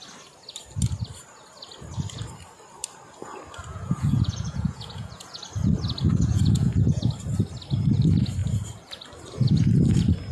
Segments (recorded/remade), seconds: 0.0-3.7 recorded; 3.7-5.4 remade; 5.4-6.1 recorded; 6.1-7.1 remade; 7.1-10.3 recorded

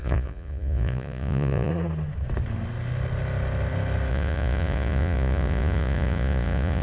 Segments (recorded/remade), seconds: 0.0-1.7 remade; 1.7-4.1 recorded; 4.1-6.8 remade

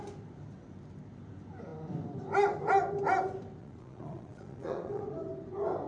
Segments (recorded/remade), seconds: 0.0-3.6 recorded; 3.6-5.0 remade; 5.0-5.9 recorded

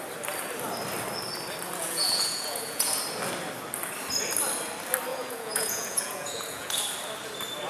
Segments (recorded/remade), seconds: 0.0-1.8 recorded; 1.8-3.0 remade; 3.0-5.1 recorded; 5.1-6.8 remade; 6.8-7.7 recorded